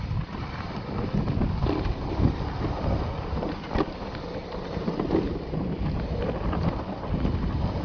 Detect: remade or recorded recorded